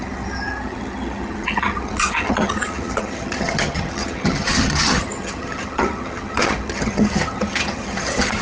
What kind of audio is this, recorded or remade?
remade